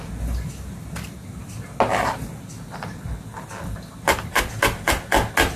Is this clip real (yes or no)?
yes